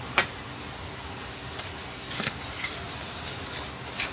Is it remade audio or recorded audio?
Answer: recorded